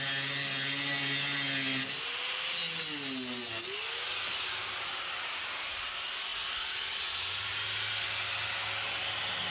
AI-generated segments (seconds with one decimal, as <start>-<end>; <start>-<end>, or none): none